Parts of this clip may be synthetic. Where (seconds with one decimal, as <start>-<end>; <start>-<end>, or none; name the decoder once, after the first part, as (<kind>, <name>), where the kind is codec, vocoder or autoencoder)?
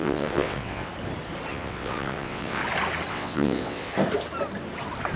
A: 0.0-0.9 (vocoder, WaveNeXt); 1.5-2.6; 3.1-3.9